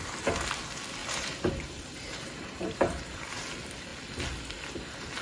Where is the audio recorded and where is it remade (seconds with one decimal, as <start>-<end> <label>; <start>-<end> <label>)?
0.0-1.0 recorded; 1.0-3.3 remade; 3.3-5.2 recorded